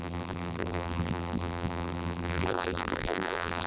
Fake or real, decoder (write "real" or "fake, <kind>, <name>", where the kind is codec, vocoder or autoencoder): fake, vocoder, BigVGAN v2